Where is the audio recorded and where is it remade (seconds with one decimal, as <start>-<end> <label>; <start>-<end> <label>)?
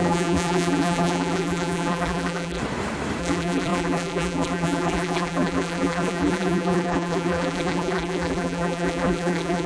0.0-2.6 remade; 2.6-3.2 recorded; 3.2-9.7 remade